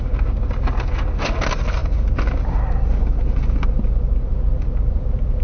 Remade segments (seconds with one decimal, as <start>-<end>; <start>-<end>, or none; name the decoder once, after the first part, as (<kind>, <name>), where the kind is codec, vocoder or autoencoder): none